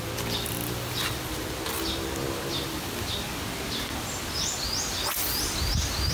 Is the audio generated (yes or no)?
no